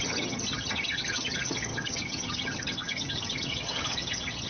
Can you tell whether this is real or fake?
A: fake